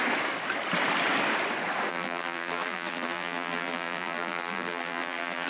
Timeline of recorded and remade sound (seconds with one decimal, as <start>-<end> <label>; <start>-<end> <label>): 0.0-1.9 recorded; 1.9-5.5 remade